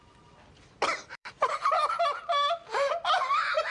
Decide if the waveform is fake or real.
fake